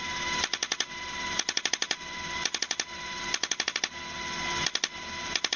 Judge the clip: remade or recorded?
recorded